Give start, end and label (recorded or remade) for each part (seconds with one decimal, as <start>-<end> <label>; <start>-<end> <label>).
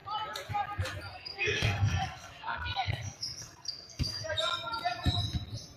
0.0-1.1 recorded; 1.1-4.3 remade; 4.3-5.8 recorded